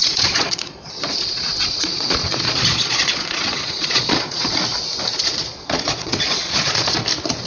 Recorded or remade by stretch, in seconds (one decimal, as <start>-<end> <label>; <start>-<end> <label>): 0.0-4.5 remade; 4.5-5.1 recorded; 5.1-7.0 remade; 7.0-7.5 recorded